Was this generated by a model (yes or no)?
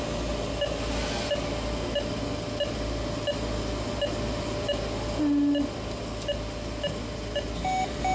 no